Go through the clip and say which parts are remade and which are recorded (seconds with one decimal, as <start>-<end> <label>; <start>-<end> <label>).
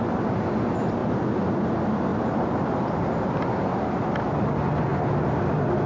0.0-2.1 recorded; 2.1-3.2 remade; 3.2-5.9 recorded